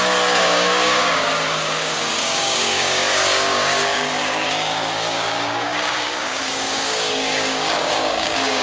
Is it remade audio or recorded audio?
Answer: remade